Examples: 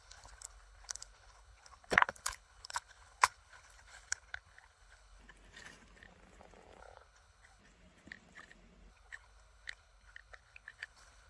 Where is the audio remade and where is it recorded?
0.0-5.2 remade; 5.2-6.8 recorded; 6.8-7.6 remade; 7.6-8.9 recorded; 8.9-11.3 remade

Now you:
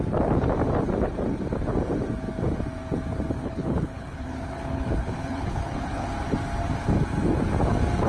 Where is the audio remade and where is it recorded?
0.0-3.4 recorded; 3.4-6.1 remade; 6.1-8.1 recorded

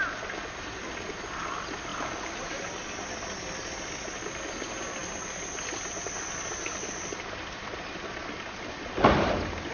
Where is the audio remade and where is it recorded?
0.0-9.7 recorded

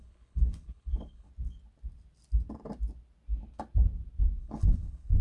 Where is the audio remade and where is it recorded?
0.0-1.3 remade; 1.3-4.4 recorded; 4.4-5.2 remade

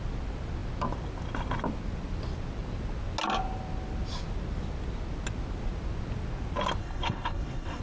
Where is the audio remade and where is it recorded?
0.0-6.8 recorded; 6.8-7.8 remade

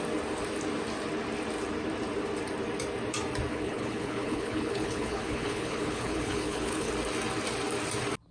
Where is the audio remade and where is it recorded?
0.0-3.5 recorded; 3.5-6.9 remade; 6.9-8.3 recorded

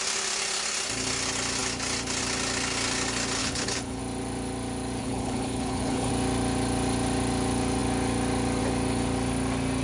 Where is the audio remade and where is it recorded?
0.0-3.4 recorded; 3.4-4.0 remade; 4.0-5.0 recorded; 5.0-6.1 remade; 6.1-9.8 recorded

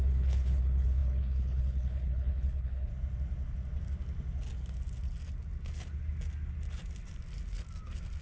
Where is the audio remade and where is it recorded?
0.0-2.9 remade; 2.9-8.2 recorded